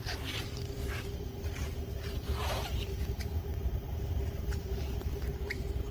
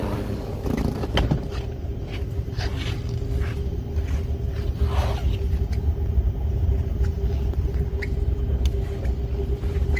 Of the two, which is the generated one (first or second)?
first